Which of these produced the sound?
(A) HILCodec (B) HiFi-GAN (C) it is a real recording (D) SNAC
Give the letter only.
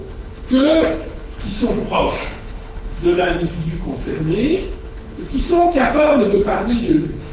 A